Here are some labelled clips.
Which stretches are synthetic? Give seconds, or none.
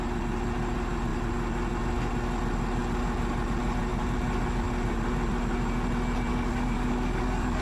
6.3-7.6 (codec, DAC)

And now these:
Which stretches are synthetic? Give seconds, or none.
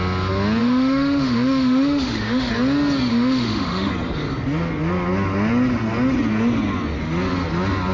0.6-2.5 (autoencoder, DAC-VAE); 3.1-3.9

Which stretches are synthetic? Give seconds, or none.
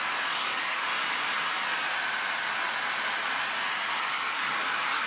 0.0-0.9 (codec, DAC); 4.0-5.1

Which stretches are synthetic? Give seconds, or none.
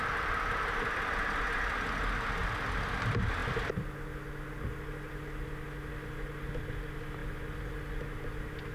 none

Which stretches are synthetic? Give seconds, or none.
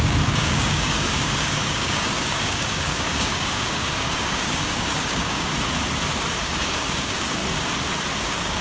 0.0-5.5 (codec, DAC); 6.4-7.4; 8.2-8.6